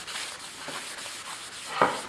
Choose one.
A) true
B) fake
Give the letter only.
A